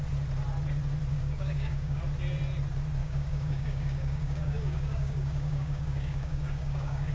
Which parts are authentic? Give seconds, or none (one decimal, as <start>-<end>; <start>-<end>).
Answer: 0.0-1.1; 2.0-3.0